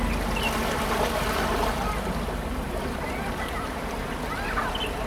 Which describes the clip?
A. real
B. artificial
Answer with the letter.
A